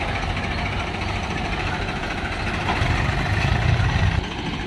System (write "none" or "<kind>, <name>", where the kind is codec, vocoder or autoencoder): none